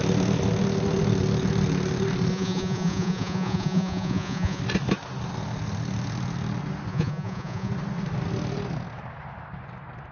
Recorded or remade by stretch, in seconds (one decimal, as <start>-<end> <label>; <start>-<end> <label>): 0.0-2.3 recorded; 2.3-4.6 remade; 4.6-6.9 recorded; 6.9-7.7 remade; 7.7-10.1 recorded